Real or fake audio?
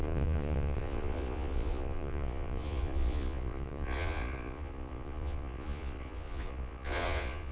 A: fake